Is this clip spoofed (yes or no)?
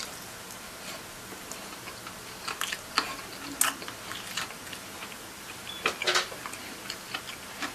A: no